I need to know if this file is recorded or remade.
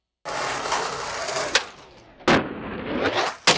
recorded